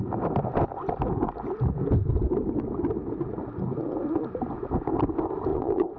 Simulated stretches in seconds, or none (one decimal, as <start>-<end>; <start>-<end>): 5.5-6.0